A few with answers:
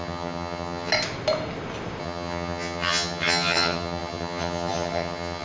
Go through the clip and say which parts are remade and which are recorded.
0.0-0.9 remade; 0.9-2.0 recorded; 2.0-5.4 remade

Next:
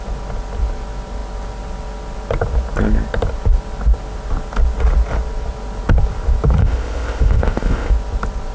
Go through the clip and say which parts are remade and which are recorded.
0.0-6.6 recorded; 6.6-7.9 remade; 7.9-8.5 recorded

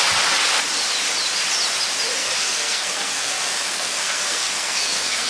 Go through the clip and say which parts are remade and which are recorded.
0.0-2.2 recorded; 2.2-5.3 remade

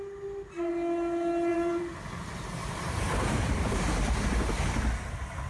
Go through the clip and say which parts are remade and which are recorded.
0.0-1.5 recorded; 1.5-3.7 remade; 3.7-5.5 recorded

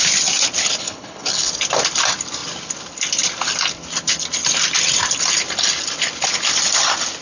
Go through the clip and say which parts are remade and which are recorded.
0.0-0.6 recorded; 0.6-1.5 remade; 1.5-7.2 recorded

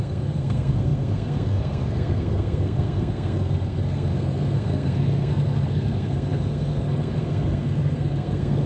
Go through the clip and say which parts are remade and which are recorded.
0.0-8.7 remade

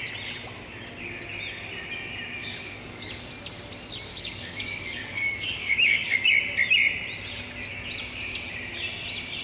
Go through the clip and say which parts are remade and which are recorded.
0.0-2.4 recorded; 2.4-3.1 remade; 3.1-4.1 recorded; 4.1-6.3 remade; 6.3-9.4 recorded